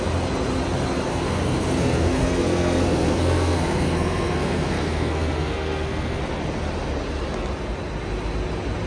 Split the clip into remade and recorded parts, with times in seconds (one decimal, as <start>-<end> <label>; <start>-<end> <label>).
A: 0.0-1.1 recorded; 1.1-6.2 remade; 6.2-8.9 recorded